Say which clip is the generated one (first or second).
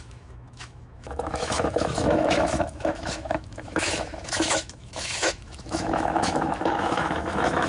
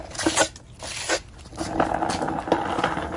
first